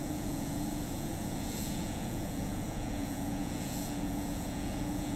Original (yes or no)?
no